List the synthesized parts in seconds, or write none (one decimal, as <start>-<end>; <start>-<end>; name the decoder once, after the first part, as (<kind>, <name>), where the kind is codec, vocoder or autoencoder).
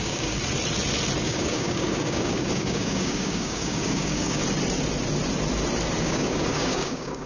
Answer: 0.0-0.4 (codec, DAC); 1.2-4.4; 6.0-7.3